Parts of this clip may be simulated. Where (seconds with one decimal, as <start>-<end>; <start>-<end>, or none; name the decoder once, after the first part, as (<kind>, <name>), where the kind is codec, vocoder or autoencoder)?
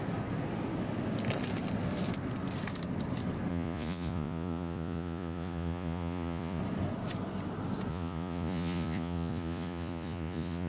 3.5-6.6 (vocoder, Vocos); 7.9-10.7